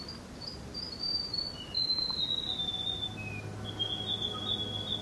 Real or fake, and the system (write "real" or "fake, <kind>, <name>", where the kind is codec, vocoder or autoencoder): real